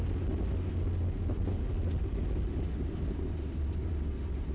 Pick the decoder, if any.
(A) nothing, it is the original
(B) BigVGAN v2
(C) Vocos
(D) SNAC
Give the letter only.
A